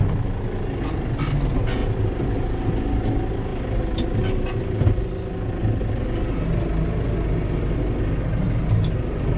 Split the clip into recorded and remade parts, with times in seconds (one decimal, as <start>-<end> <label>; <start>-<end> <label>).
0.0-9.4 recorded